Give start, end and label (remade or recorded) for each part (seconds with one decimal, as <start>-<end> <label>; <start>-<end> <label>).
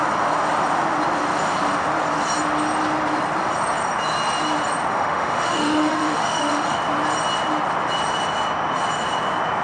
0.0-4.9 recorded; 4.9-6.8 remade; 6.8-9.6 recorded